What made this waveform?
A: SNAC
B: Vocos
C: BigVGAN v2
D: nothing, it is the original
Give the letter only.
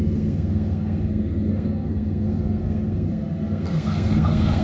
A